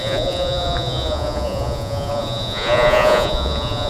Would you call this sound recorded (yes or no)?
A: no